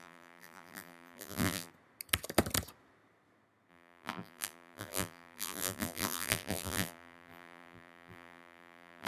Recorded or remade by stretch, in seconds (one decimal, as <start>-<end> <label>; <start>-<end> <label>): 0.0-1.7 remade; 1.7-3.7 recorded; 3.7-9.1 remade